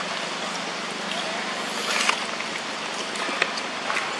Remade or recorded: recorded